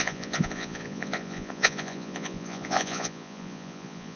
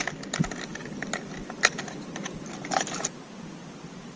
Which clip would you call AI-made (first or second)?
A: first